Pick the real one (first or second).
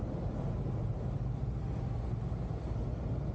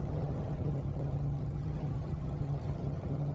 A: first